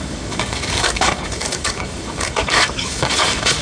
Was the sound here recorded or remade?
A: remade